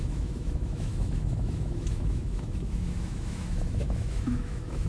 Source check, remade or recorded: remade